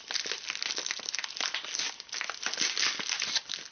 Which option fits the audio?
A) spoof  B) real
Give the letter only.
B